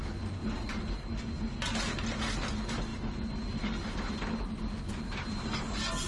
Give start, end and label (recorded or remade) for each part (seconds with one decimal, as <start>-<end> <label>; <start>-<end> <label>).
0.0-6.1 recorded